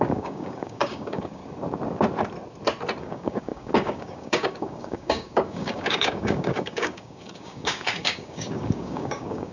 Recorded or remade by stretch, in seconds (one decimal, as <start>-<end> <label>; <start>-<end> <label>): 0.0-1.4 remade; 1.4-3.0 recorded; 3.0-9.5 remade